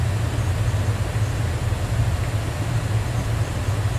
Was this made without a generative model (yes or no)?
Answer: yes